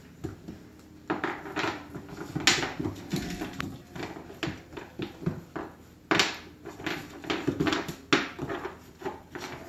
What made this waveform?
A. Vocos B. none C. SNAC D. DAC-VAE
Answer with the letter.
B